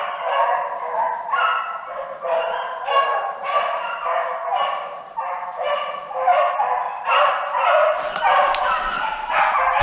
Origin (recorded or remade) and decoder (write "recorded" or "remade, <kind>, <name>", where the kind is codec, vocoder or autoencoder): recorded